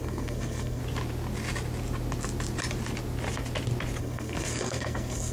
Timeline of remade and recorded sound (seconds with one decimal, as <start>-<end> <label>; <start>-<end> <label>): 0.0-0.8 remade; 0.8-4.0 recorded; 4.0-5.3 remade